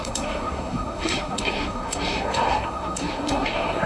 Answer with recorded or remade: remade